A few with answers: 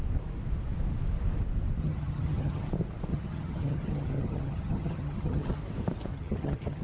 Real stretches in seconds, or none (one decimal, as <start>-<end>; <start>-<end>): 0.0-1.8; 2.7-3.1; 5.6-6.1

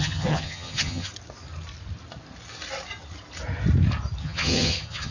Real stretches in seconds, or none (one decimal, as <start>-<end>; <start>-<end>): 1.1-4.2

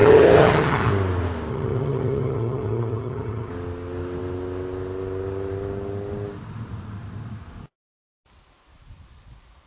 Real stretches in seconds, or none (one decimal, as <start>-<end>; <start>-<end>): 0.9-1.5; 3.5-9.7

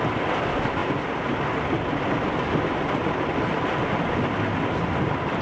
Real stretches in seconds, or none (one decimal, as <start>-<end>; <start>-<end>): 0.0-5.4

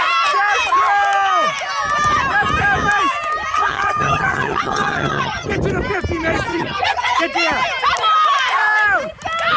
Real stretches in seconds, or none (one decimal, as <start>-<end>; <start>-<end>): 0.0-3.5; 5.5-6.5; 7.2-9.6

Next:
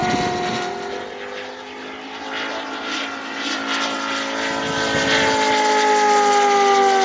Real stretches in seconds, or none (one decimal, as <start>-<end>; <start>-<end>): 0.0-7.0

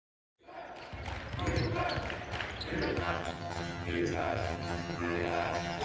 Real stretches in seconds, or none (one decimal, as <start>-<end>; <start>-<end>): 0.0-3.0